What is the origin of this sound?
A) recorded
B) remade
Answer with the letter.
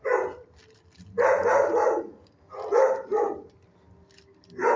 A